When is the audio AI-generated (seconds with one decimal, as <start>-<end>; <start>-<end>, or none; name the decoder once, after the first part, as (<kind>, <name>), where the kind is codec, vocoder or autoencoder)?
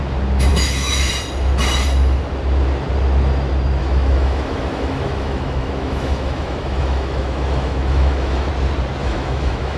0.5-1.1 (autoencoder, DAC-VAE); 3.8-8.5; 9.0-9.8